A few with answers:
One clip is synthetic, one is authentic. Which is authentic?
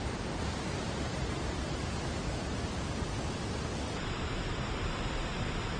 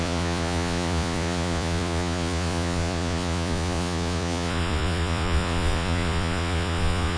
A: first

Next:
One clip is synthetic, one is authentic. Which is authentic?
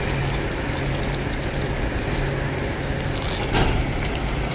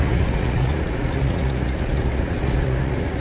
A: first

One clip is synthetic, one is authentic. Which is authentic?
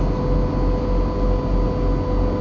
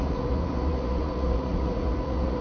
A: first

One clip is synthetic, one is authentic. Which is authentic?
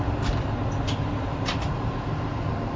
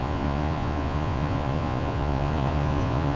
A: first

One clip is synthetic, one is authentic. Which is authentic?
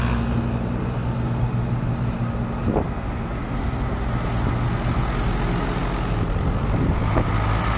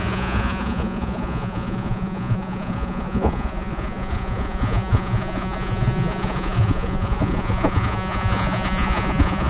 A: first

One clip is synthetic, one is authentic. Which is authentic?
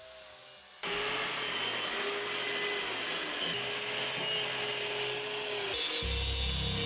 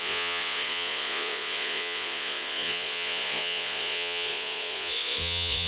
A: first